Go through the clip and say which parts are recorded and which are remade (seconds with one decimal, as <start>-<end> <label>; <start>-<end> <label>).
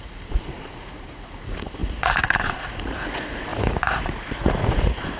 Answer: 0.0-5.2 remade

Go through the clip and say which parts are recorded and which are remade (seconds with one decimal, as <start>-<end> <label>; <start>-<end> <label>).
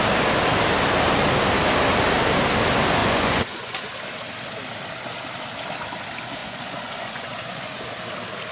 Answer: 0.0-3.0 recorded; 3.0-3.8 remade; 3.8-6.4 recorded; 6.4-7.8 remade; 7.8-8.5 recorded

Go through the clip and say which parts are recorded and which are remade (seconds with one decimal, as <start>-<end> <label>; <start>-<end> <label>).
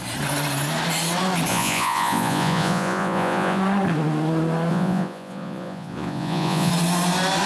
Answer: 0.0-1.5 recorded; 1.5-3.6 remade; 3.6-4.7 recorded; 4.7-6.7 remade; 6.7-7.5 recorded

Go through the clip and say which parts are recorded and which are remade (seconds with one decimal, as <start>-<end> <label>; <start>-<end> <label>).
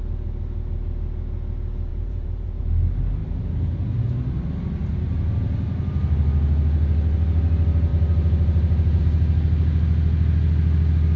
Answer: 0.0-1.9 recorded; 1.9-2.6 remade; 2.6-11.2 recorded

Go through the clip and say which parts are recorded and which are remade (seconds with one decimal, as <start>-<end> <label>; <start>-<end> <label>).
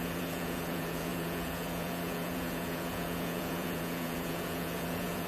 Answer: 0.0-5.3 remade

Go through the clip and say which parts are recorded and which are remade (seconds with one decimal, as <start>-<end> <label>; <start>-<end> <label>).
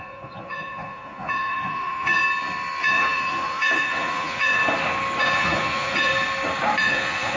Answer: 0.0-2.2 remade; 2.2-2.8 recorded; 2.8-4.6 remade; 4.6-5.2 recorded; 5.2-6.1 remade; 6.1-6.8 recorded; 6.8-7.4 remade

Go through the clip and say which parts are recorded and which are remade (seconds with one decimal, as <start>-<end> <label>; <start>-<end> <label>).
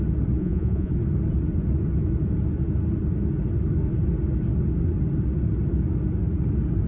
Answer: 0.0-0.4 recorded; 0.4-0.9 remade; 0.9-6.9 recorded